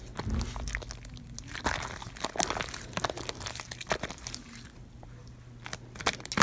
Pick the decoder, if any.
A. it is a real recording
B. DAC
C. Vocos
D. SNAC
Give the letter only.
A